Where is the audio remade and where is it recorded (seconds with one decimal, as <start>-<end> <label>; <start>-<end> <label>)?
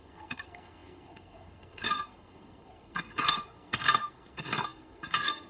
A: 0.0-5.5 remade